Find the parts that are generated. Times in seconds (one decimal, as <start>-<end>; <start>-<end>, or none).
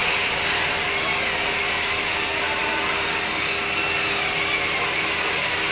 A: 0.0-0.8